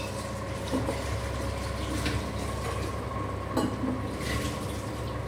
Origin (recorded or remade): recorded